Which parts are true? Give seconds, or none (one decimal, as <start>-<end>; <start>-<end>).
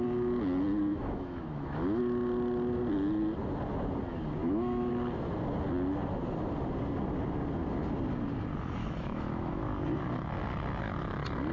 0.0-0.9; 2.0-4.4; 4.9-8.8; 9.6-11.5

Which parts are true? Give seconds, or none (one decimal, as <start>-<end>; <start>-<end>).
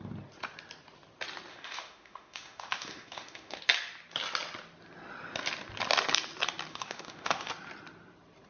0.0-1.5; 3.6-6.7; 7.5-8.5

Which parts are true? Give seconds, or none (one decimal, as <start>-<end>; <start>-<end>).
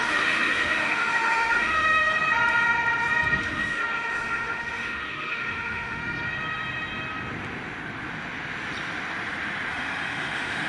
2.1-3.4; 6.0-9.7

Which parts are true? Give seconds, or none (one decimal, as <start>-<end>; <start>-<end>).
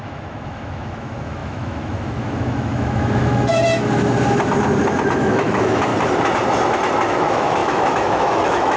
3.5-5.2; 5.9-7.1